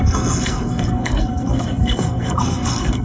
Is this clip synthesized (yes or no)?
yes